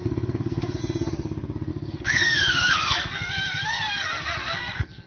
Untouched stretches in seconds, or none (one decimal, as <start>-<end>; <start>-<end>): 0.8-1.7